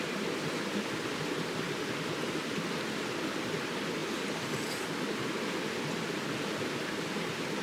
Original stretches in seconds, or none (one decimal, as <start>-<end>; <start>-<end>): 0.0-7.6